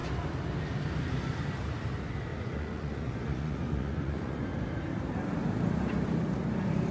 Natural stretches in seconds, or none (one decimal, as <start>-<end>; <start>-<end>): 0.0-2.3; 4.4-6.9